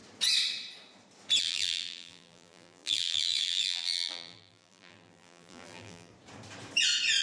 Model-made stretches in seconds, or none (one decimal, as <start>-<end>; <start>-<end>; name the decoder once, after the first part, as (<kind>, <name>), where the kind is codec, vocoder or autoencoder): 1.4-6.1 (vocoder, BigVGAN v2)